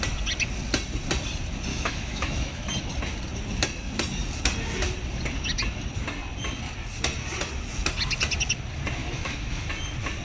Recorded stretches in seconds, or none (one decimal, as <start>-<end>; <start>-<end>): 0.0-1.7; 2.7-9.0; 9.7-10.2